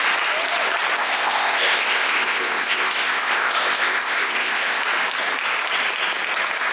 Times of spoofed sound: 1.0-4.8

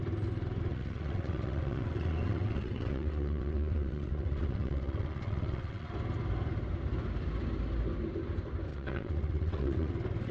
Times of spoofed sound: 0.7-5.9; 8.7-9.9

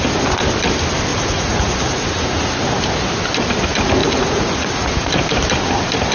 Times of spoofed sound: 1.1-2.6; 4.0-4.9

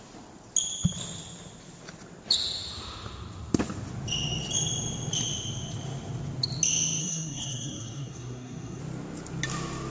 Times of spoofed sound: 7.0-8.8

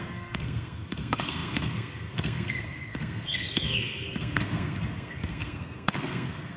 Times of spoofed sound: 0.0-6.6

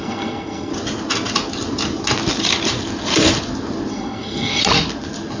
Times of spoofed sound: 0.0-0.7; 3.9-4.6

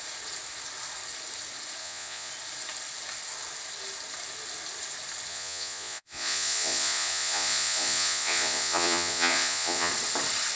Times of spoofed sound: 1.8-2.3; 5.3-9.9

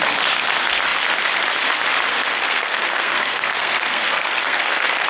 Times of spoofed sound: 2.1-5.1